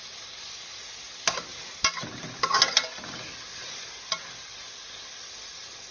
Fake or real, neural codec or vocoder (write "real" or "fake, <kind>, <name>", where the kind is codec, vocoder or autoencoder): real